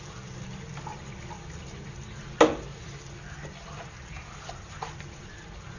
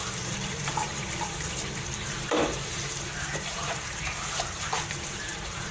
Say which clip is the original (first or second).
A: first